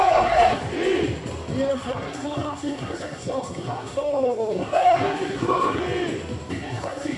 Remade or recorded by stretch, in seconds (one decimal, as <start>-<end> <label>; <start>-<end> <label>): 0.0-0.6 remade; 0.6-1.7 recorded; 1.7-5.8 remade; 5.8-6.5 recorded; 6.5-7.2 remade